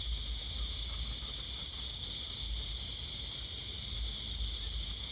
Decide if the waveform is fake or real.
real